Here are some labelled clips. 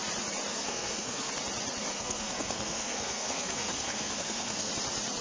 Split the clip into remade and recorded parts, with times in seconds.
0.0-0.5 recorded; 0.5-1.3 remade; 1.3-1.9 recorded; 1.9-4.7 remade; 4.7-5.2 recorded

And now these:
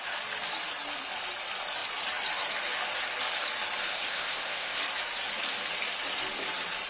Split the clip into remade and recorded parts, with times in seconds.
0.0-3.9 recorded; 3.9-4.8 remade; 4.8-6.9 recorded

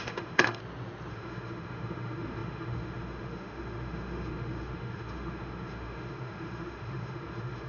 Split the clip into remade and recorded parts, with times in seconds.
0.0-0.6 remade; 0.6-1.1 recorded; 1.1-7.7 remade

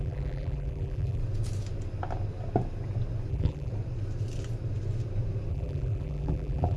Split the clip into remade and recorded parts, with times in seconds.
0.0-1.2 remade; 1.2-3.3 recorded; 3.3-3.7 remade; 3.7-5.5 recorded; 5.5-6.8 remade

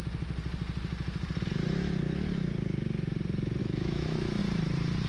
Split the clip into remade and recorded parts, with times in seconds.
0.0-3.6 recorded; 3.6-4.4 remade; 4.4-5.1 recorded